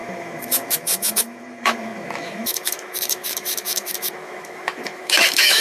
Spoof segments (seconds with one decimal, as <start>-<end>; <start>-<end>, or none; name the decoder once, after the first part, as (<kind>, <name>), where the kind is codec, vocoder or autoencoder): 0.0-5.6 (autoencoder, DAC-VAE)